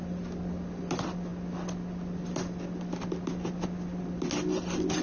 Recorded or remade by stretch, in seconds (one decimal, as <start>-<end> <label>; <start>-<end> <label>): 0.0-5.0 recorded